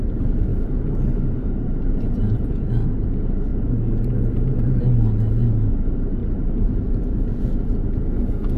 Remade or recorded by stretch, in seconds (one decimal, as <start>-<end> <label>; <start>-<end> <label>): 0.0-0.5 recorded; 0.5-2.2 remade; 2.2-3.5 recorded; 3.5-4.8 remade; 4.8-6.2 recorded; 6.2-7.4 remade; 7.4-8.6 recorded